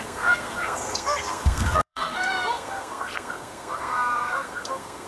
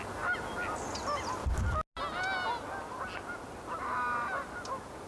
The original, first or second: second